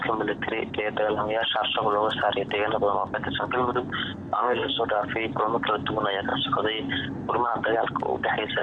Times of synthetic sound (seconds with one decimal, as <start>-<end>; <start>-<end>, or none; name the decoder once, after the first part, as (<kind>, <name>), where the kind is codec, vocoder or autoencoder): 4.1-4.8 (codec, SNAC)